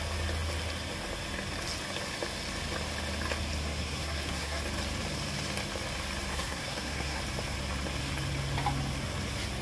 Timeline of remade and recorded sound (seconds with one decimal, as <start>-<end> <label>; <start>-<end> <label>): 0.0-3.6 recorded; 3.6-4.6 remade; 4.6-6.3 recorded; 6.3-7.2 remade; 7.2-9.6 recorded